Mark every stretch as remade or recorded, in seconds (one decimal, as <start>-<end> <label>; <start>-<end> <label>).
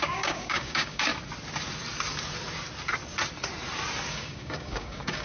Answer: 0.0-1.1 remade; 1.1-4.1 recorded; 4.1-5.2 remade